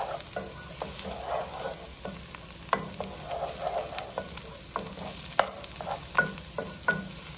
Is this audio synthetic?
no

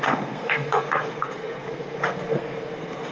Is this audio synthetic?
yes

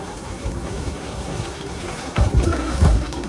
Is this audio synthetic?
yes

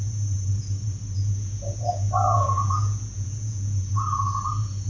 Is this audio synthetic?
yes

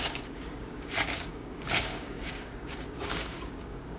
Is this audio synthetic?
yes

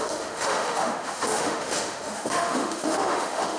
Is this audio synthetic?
yes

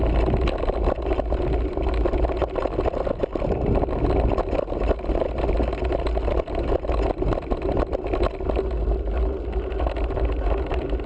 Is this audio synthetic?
no